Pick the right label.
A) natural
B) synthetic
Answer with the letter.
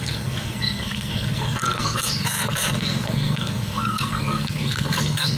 B